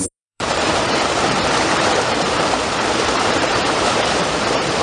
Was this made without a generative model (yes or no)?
no